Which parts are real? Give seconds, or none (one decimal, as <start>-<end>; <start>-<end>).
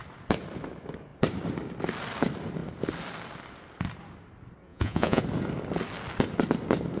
0.0-4.7; 5.2-7.0